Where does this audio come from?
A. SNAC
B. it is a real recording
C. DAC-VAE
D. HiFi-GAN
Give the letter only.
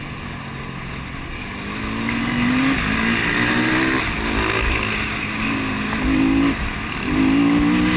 B